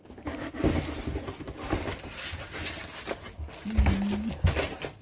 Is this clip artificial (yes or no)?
no